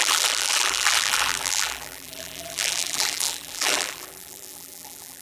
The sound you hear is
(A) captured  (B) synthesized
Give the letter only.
B